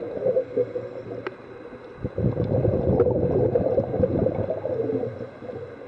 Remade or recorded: recorded